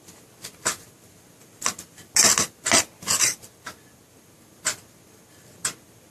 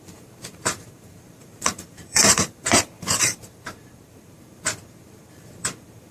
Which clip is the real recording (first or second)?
first